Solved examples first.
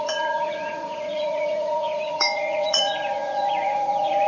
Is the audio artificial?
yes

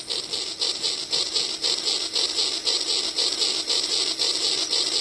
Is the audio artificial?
no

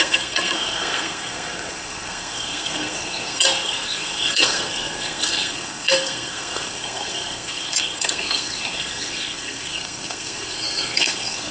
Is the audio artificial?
yes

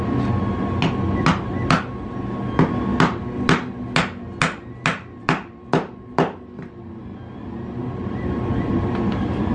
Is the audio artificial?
no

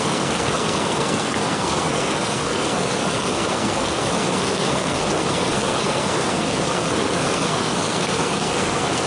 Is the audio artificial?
yes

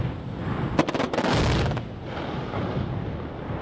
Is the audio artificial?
no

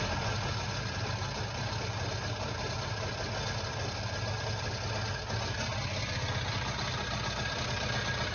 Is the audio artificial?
no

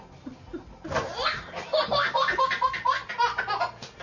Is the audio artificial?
no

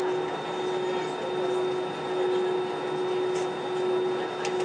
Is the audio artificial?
no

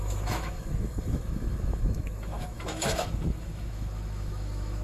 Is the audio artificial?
yes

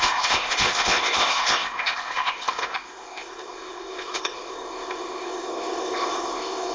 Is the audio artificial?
yes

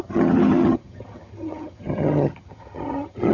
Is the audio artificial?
yes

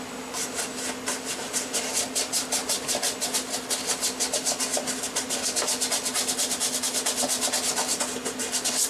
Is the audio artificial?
no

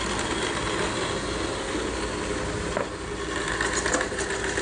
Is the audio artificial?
no